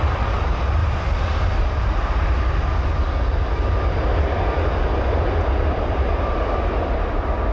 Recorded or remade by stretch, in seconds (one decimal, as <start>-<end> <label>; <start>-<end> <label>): 0.0-7.5 recorded